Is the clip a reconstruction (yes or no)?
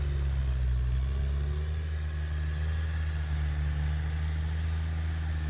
no